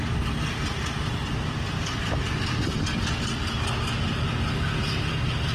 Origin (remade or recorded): recorded